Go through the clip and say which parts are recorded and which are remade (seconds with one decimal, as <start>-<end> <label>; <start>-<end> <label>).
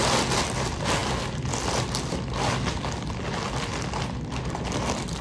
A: 0.0-5.2 recorded